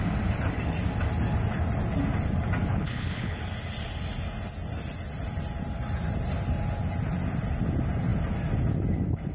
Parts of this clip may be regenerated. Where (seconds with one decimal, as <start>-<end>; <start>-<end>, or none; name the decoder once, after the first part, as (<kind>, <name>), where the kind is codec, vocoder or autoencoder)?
2.7-3.4 (codec, HILCodec)